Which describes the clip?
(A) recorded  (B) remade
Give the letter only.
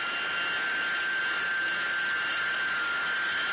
A